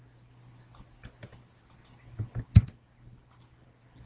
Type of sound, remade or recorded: recorded